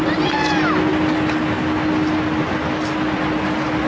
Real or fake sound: real